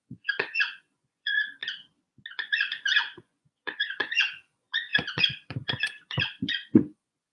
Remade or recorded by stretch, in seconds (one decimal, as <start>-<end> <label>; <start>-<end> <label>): 0.0-1.6 remade; 1.6-2.3 recorded; 2.3-7.3 remade